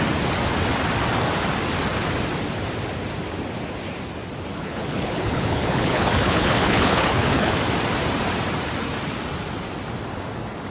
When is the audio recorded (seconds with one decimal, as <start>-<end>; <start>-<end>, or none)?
0.0-4.5; 7.6-10.7